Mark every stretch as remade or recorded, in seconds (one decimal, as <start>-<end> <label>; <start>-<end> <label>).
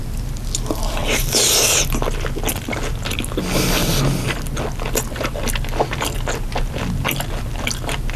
0.0-8.2 recorded